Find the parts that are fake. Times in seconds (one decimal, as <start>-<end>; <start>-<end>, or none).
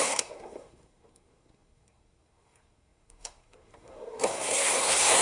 0.0-5.2